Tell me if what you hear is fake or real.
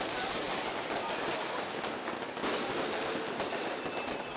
real